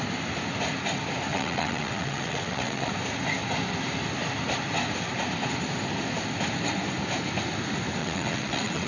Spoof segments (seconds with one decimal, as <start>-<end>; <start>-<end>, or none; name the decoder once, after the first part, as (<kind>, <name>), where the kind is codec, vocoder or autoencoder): 1.3-2.9 (vocoder, WaveNeXt); 8.0-8.9